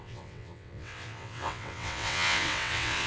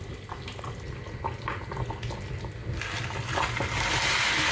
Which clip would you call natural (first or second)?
second